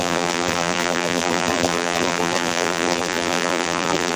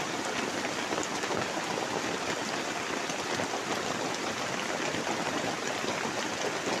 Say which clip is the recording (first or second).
second